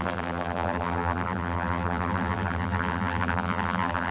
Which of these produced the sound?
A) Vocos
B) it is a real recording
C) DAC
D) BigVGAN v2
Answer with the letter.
D